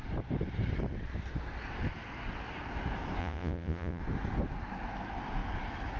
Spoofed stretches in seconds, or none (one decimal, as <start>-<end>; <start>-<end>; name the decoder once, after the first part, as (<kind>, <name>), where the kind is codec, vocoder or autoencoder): 3.2-4.0 (vocoder, Vocos)